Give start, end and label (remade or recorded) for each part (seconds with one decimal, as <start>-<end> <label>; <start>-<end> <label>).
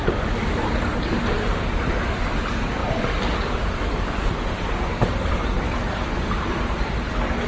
0.0-7.5 recorded